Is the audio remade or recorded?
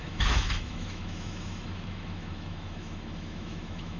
remade